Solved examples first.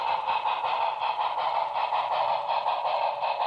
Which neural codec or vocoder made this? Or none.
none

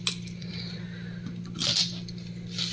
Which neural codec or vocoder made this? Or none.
none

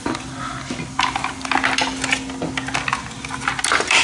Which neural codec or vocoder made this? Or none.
none